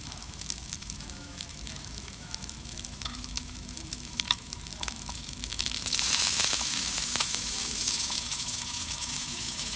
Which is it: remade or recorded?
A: remade